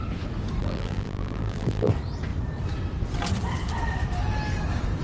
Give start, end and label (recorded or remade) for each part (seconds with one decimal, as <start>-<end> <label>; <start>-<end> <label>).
0.0-0.6 recorded; 0.6-1.9 remade; 1.9-5.0 recorded